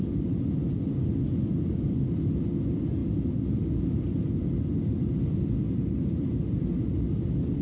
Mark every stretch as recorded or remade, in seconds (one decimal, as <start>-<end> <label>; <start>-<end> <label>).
0.0-7.6 recorded